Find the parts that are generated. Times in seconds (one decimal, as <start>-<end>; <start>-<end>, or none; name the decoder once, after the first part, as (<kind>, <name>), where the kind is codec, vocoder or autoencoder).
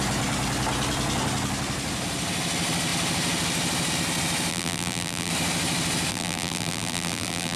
4.5-5.3 (vocoder, BigVGAN v2); 6.1-7.6